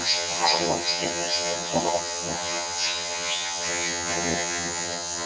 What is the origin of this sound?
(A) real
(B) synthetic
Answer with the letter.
B